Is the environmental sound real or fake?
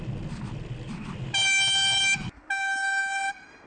real